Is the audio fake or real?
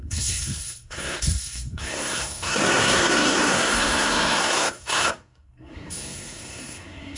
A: fake